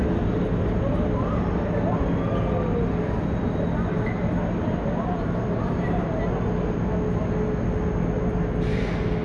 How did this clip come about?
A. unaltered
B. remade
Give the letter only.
A